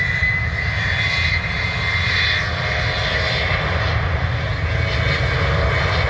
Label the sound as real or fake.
real